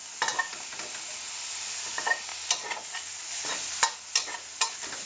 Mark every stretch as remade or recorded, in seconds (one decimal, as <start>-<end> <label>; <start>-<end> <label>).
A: 0.0-5.1 recorded